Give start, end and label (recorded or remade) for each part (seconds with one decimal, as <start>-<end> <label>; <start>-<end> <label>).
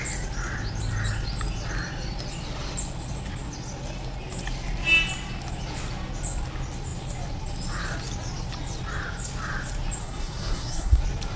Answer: 0.0-10.0 recorded; 10.0-11.0 remade; 11.0-11.4 recorded